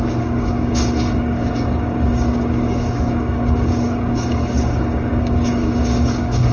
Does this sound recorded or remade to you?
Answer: remade